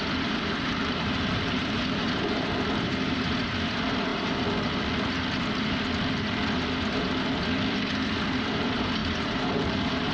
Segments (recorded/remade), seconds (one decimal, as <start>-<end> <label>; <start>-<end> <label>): 0.0-4.1 remade; 4.1-8.4 recorded; 8.4-10.1 remade